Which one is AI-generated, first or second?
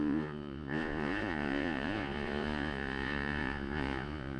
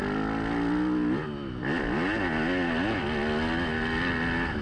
first